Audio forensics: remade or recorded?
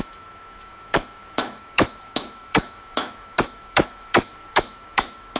remade